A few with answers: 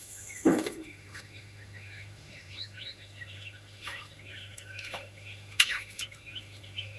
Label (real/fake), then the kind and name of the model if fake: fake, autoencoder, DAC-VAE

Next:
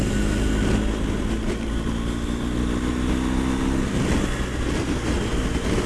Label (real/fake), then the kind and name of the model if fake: real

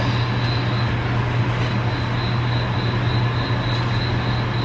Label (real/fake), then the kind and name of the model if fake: real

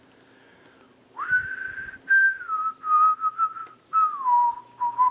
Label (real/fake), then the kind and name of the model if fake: real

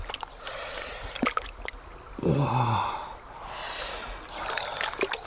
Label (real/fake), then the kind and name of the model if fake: real